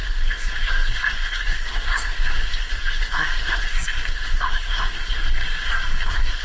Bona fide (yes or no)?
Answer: no